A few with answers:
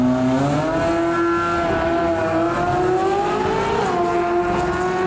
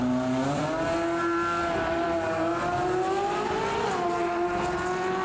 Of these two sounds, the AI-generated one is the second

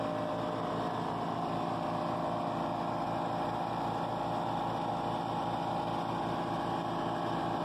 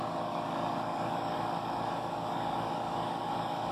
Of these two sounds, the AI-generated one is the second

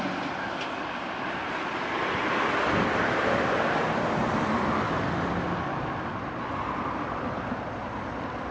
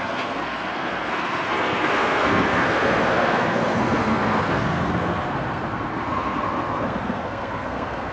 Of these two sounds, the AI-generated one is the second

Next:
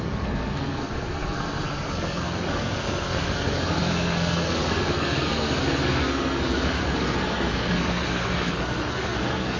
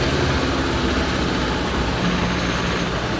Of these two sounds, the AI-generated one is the first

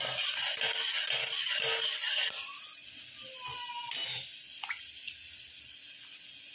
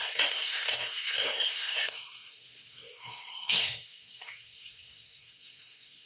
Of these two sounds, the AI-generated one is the second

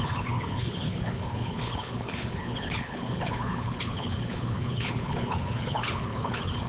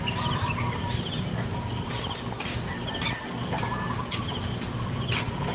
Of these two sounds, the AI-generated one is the first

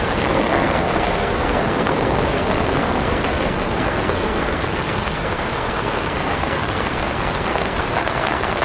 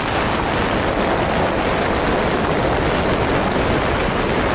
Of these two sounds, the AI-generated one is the first